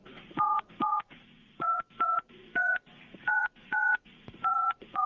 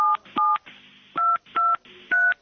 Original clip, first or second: second